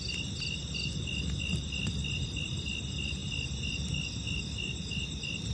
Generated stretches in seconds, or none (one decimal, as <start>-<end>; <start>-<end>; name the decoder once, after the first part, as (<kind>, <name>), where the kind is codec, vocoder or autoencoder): none